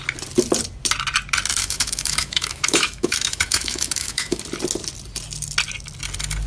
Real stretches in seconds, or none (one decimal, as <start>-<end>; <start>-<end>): 0.0-1.6; 4.4-6.5